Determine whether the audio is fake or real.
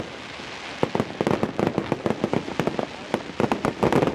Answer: real